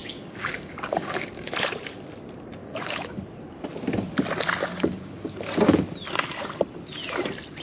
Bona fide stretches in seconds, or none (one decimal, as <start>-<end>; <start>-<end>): 1.5-2.6; 3.2-4.6; 5.3-7.6